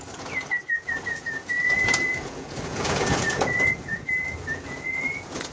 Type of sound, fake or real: fake